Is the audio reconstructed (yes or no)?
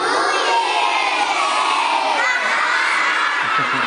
yes